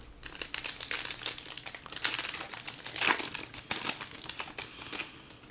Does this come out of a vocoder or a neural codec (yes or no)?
no